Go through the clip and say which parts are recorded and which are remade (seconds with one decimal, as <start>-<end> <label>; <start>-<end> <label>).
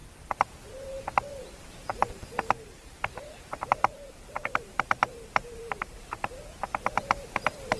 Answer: 0.0-0.5 remade; 0.5-1.9 recorded; 1.9-6.4 remade; 6.4-7.8 recorded